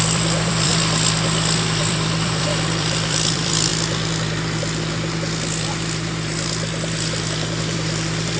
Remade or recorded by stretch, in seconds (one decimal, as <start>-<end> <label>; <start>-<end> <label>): 0.0-0.7 remade; 0.7-1.8 recorded; 1.8-3.7 remade; 3.7-7.6 recorded; 7.6-8.4 remade